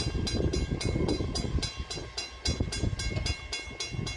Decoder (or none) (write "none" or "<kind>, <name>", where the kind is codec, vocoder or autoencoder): none